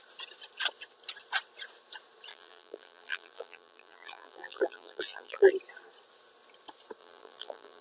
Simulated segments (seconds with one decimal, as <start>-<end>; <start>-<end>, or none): 2.3-5.5; 7.0-7.8